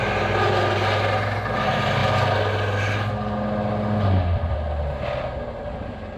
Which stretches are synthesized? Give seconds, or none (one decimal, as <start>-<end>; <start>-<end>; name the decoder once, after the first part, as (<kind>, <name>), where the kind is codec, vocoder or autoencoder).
none